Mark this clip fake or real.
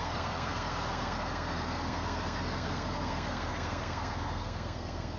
fake